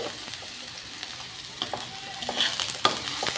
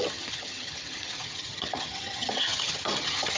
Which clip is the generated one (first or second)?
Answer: second